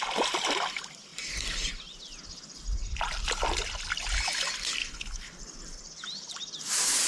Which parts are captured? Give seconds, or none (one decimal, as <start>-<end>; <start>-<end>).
0.0-4.8; 5.4-7.1